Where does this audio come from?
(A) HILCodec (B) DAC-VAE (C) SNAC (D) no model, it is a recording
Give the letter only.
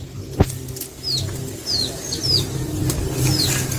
D